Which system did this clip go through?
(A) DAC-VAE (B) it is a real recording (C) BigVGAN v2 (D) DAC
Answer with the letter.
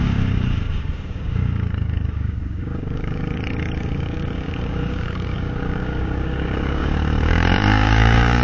D